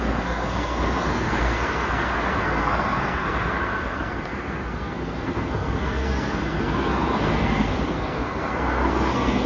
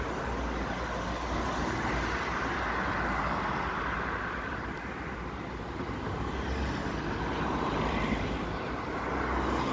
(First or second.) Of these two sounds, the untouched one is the second